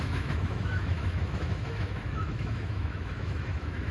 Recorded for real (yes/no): no